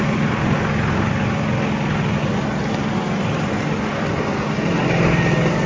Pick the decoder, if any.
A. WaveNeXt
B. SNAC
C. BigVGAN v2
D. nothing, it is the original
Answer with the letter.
D